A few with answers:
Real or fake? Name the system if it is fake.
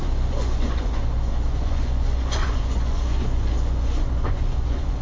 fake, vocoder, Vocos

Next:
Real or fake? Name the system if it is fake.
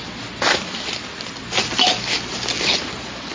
real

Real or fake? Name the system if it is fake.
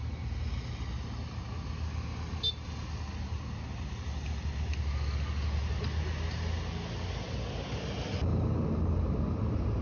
real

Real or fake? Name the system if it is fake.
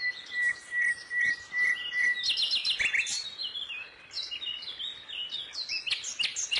real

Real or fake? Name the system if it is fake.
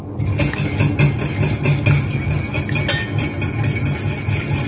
real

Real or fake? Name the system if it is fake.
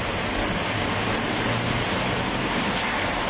real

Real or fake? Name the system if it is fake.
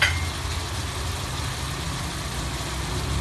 real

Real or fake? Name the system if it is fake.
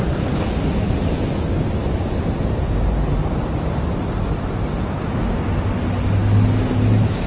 real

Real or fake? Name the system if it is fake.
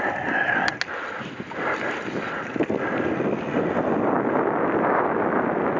real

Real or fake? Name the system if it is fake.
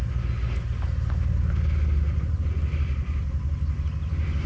real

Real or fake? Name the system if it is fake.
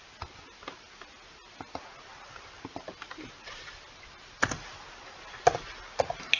real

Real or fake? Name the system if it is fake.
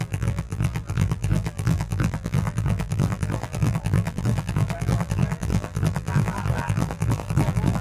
fake, vocoder, BigVGAN v2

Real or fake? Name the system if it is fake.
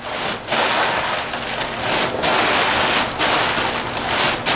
real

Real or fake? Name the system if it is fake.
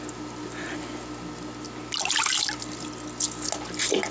real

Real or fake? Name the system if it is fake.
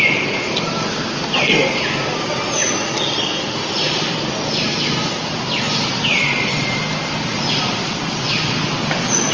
real